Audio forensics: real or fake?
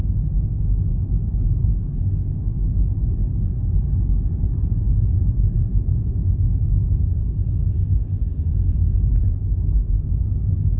real